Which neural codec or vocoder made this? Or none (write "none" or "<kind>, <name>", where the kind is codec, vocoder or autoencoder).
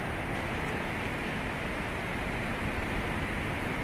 none